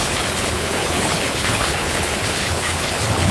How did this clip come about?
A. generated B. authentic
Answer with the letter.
A